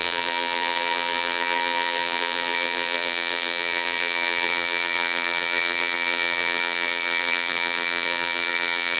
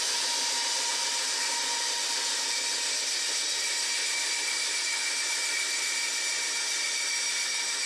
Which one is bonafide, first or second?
second